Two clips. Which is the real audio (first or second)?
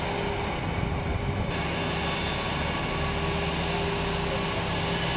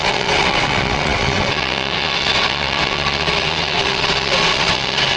first